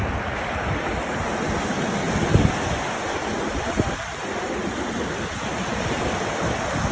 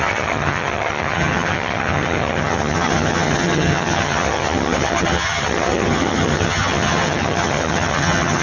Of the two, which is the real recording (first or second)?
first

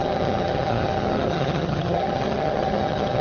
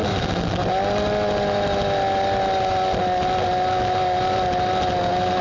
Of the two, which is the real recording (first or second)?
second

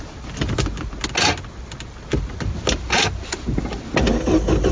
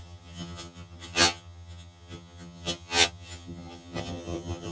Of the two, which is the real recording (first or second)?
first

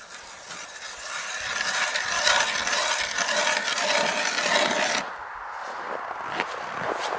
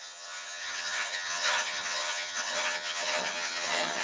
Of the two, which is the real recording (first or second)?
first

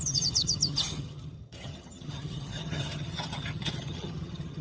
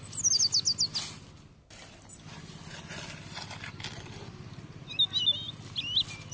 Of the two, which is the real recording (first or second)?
second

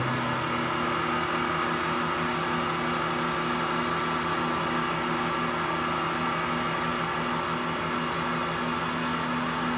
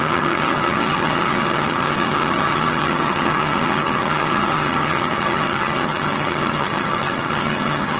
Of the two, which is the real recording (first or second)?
first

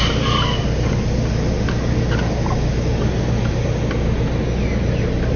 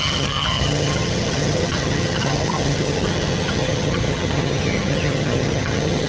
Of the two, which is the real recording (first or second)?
first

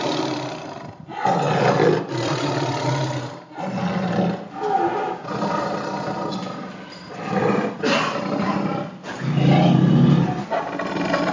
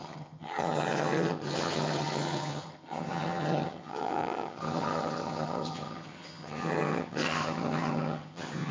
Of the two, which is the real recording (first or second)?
first